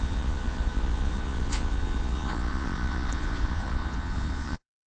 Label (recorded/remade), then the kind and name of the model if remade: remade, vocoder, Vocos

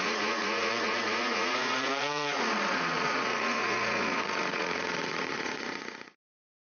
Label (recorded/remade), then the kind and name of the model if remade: remade, vocoder, Vocos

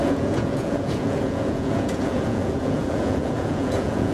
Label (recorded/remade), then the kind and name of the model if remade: remade, vocoder, Vocos